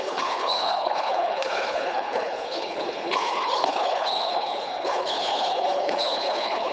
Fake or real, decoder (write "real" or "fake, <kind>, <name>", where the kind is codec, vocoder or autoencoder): fake, codec, HILCodec